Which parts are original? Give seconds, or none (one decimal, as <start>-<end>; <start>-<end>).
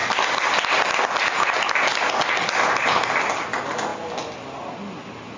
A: 0.0-5.4